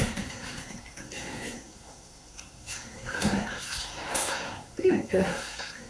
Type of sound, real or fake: fake